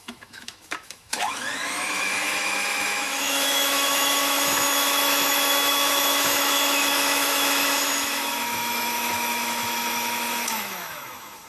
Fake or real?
fake